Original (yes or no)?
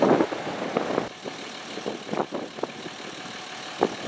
yes